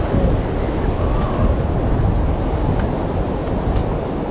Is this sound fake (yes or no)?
no